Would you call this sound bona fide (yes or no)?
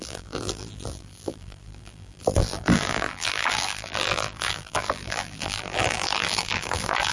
no